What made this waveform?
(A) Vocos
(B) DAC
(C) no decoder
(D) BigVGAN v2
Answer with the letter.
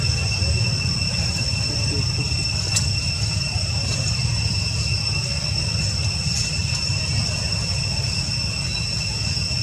C